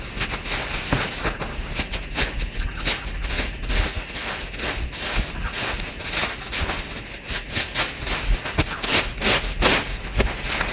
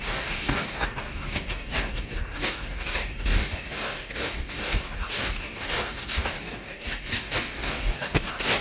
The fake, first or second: second